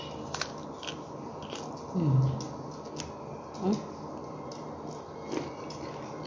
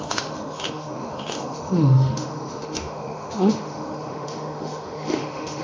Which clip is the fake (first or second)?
second